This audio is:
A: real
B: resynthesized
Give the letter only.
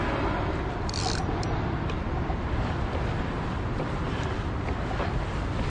A